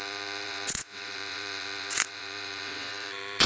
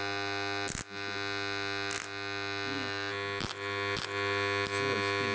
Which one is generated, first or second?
first